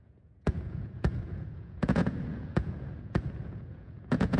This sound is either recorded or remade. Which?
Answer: remade